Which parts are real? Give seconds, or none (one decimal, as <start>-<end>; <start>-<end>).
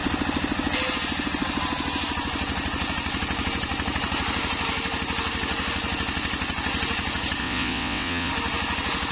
0.0-7.4; 8.3-9.1